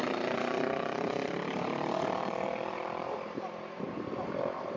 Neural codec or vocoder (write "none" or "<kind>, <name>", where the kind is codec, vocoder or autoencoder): vocoder, BigVGAN v2